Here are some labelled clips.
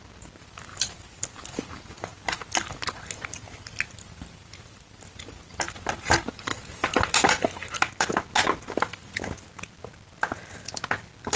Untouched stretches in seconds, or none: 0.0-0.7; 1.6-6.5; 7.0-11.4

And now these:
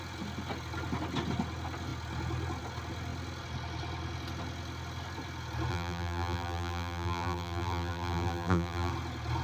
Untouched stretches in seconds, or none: 0.0-5.7; 8.9-9.4